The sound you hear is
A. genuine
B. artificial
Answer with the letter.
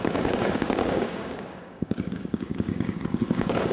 B